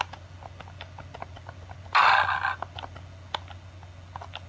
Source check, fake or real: real